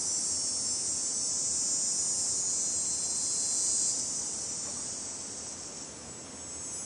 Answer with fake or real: real